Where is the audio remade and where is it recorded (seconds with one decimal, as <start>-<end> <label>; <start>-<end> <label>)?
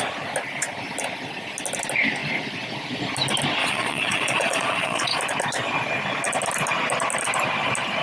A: 0.0-3.6 recorded; 3.6-5.2 remade; 5.2-8.0 recorded